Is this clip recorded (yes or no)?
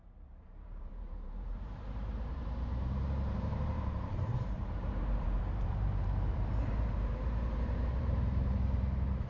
no